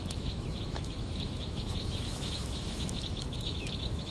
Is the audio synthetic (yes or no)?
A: yes